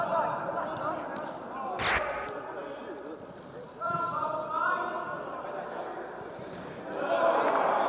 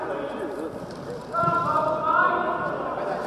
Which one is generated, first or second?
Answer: first